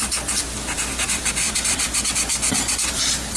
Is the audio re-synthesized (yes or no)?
yes